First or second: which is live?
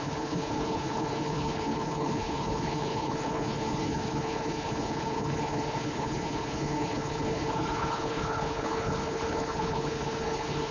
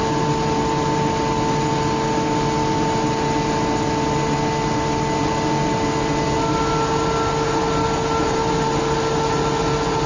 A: second